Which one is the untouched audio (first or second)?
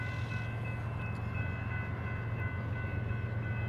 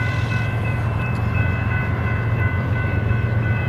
first